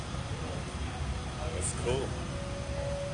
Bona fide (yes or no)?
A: yes